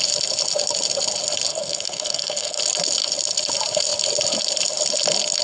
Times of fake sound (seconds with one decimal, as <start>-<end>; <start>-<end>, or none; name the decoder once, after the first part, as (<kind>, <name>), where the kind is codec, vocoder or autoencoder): 1.5-2.6 (codec, SNAC)

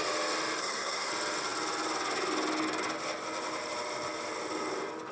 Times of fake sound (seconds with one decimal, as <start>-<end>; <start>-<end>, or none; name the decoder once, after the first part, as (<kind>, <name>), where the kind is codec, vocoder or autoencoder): 0.6-1.1 (codec, SNAC)

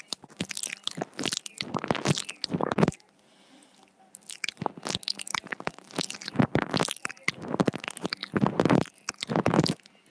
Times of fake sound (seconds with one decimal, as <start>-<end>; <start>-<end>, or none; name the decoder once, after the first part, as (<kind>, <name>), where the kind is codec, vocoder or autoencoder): none

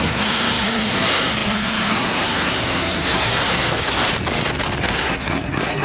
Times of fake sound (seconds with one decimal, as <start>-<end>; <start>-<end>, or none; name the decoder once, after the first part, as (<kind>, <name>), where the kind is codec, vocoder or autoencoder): 0.0-4.0 (codec, SNAC); 4.8-5.8